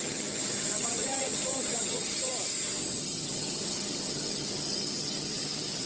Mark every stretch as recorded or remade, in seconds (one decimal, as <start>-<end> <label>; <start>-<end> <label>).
0.0-2.3 remade; 2.3-3.0 recorded; 3.0-5.9 remade